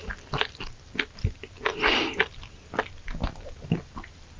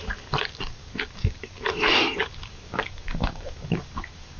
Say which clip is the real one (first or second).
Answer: first